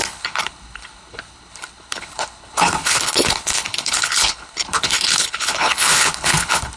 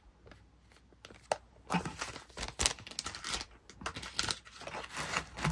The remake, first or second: first